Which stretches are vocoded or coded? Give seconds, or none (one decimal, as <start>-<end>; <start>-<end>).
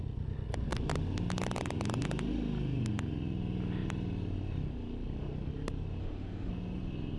6.0-6.5